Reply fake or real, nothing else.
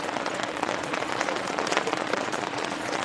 fake